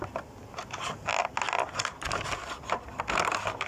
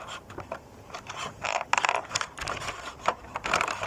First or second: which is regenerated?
second